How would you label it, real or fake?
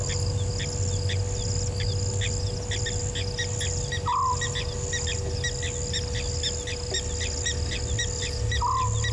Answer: real